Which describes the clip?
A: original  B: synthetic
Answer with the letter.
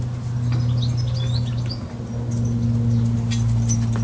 A